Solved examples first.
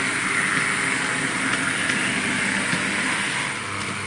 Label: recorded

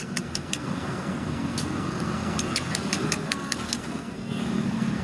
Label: remade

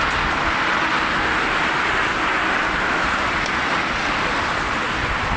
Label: recorded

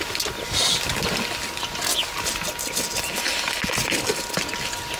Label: recorded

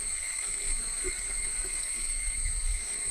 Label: remade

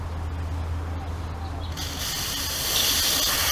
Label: recorded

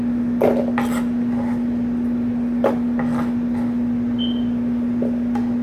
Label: recorded